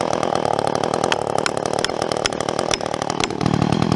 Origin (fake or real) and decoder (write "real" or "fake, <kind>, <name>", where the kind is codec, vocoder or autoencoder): real